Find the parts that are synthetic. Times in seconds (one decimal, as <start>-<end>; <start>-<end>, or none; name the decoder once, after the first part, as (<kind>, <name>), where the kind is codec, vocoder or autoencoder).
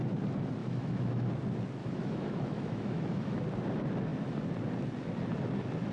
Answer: 0.6-1.3 (autoencoder, DAC-VAE); 1.8-3.4